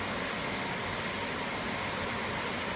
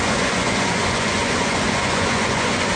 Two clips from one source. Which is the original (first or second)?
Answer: first